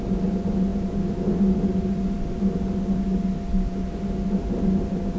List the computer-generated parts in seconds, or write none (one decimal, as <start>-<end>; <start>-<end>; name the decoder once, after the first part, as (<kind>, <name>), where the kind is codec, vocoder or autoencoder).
none